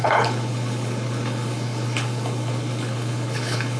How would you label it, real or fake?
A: fake